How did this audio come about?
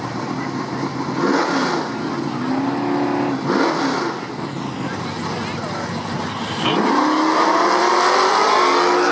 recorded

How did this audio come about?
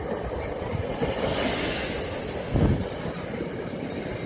recorded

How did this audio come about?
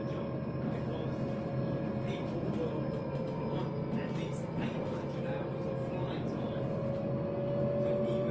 recorded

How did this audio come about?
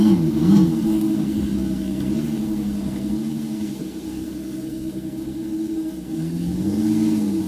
remade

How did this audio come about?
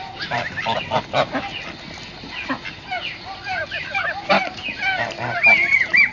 recorded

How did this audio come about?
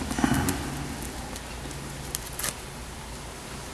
recorded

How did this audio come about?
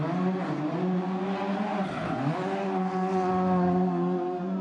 recorded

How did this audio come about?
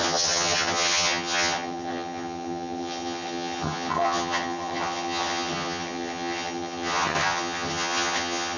remade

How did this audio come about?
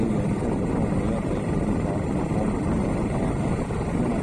recorded